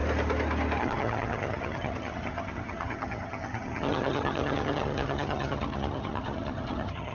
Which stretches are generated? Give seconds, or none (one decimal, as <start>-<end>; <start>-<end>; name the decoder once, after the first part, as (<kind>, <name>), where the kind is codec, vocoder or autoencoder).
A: 0.8-7.1 (vocoder, HiFi-GAN)